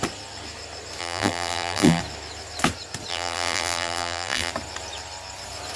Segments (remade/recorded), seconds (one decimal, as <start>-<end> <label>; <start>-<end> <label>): 0.0-1.0 recorded; 1.0-2.0 remade; 2.0-3.1 recorded; 3.1-4.5 remade; 4.5-5.8 recorded